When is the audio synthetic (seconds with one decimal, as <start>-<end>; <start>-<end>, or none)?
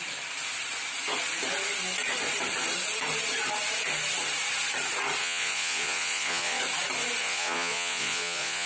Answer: 5.2-6.6; 7.2-8.7